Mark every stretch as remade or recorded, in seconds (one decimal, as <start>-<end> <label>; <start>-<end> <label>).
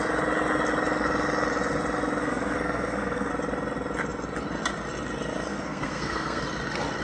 0.0-2.2 recorded; 2.2-3.3 remade; 3.3-5.5 recorded; 5.5-6.4 remade; 6.4-7.0 recorded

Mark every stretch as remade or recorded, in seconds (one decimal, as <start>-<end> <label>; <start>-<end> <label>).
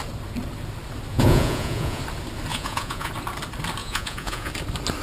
0.0-1.1 recorded; 1.1-2.0 remade; 2.0-2.5 recorded; 2.5-3.1 remade; 3.1-3.8 recorded; 3.8-4.5 remade; 4.5-5.0 recorded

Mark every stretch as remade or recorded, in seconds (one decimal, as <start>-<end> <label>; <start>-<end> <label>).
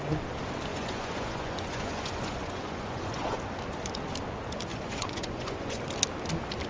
0.0-0.7 recorded; 0.7-3.4 remade; 3.4-4.7 recorded; 4.7-5.8 remade; 5.8-6.7 recorded